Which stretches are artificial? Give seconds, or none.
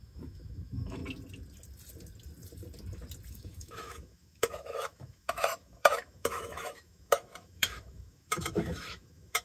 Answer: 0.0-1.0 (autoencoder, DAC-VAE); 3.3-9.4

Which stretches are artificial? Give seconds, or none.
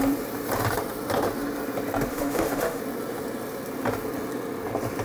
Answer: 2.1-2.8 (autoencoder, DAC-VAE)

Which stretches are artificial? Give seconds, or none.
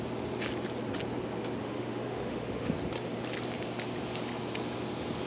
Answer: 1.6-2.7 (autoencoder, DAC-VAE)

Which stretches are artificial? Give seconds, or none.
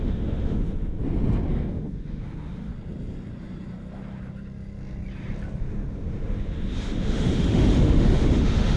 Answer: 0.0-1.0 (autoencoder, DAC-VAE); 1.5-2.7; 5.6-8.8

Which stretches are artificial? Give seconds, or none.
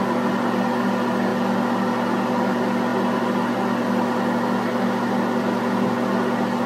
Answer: none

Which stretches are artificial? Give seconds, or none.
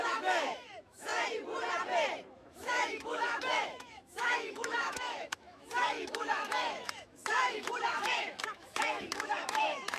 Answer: 0.0-1.1 (autoencoder, DAC-VAE); 2.3-10.0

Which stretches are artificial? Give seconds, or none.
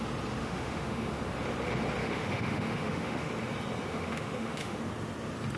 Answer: 0.4-1.2 (autoencoder, DAC-VAE); 2.0-3.3; 3.9-4.8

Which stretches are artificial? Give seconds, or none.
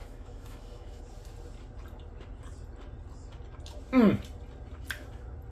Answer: 0.0-1.0 (autoencoder, DAC-VAE)